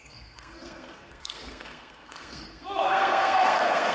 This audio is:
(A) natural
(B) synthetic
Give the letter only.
B